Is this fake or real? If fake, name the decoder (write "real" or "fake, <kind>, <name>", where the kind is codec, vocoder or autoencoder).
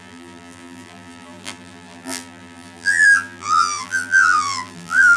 fake, vocoder, BigVGAN v2